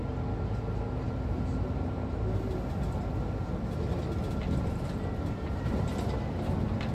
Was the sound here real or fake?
real